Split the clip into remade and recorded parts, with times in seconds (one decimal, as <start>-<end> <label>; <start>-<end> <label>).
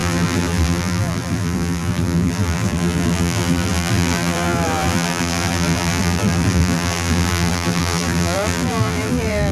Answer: 0.0-9.5 remade